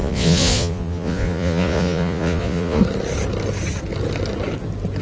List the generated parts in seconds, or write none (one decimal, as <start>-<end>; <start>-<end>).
0.0-2.8